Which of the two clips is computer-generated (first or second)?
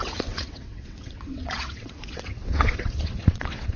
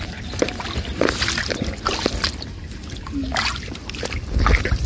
first